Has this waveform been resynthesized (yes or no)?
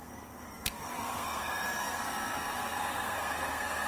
yes